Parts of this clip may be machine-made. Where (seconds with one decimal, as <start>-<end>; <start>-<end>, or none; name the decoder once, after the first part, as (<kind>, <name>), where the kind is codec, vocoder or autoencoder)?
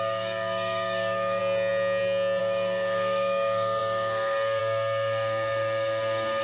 0.0-1.4 (codec, DAC); 2.4-6.4